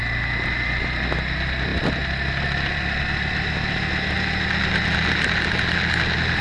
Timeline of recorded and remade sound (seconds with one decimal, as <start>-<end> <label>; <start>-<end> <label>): 0.0-6.4 recorded